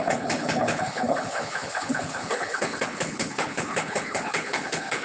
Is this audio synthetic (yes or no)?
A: yes